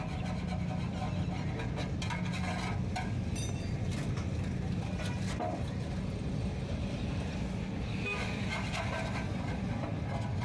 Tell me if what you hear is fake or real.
real